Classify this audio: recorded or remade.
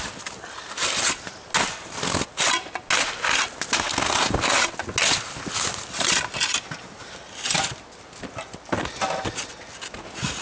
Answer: recorded